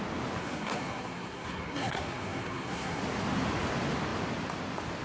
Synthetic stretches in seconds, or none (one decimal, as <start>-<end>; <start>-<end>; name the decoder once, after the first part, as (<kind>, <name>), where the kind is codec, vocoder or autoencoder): 0.4-3.0 (codec, SNAC)